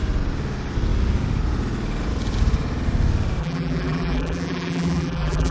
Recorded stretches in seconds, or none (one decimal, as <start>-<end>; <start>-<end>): 0.0-3.4